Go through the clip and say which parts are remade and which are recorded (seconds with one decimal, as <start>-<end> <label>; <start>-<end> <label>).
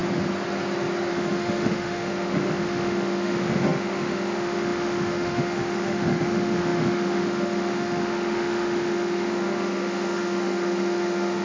0.0-1.1 recorded; 1.1-11.4 remade